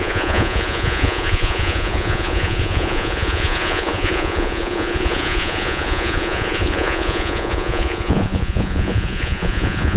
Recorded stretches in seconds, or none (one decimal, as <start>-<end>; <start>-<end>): none